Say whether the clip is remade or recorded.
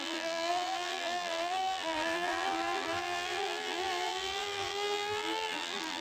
remade